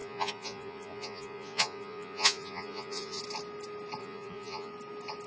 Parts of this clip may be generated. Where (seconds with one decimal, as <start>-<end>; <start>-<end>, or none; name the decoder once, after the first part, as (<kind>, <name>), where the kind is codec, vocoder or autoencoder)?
0.0-3.2 (vocoder, Vocos); 4.0-4.7